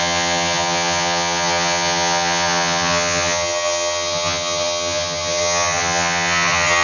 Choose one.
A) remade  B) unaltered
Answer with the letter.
A